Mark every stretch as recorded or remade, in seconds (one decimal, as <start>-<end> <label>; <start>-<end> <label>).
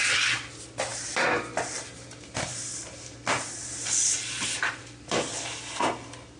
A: 0.0-6.4 recorded